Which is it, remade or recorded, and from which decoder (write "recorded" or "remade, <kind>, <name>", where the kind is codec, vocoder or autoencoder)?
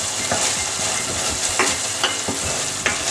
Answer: recorded